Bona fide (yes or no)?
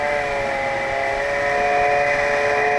yes